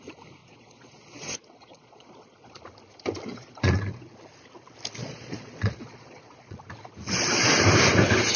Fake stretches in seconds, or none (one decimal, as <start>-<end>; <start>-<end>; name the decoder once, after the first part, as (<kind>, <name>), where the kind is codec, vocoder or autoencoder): 0.4-2.6 (vocoder, Vocos); 3.3-4.1; 5.0-6.6